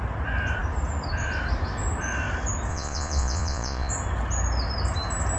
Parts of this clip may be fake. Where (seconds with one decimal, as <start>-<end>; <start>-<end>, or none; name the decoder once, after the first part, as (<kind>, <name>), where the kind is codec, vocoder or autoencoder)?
2.7-3.9 (vocoder, Vocos)